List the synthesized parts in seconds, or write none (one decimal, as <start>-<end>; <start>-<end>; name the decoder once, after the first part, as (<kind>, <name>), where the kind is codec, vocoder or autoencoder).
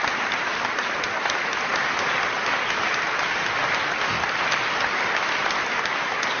none